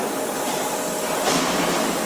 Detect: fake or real real